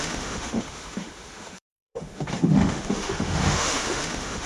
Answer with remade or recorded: remade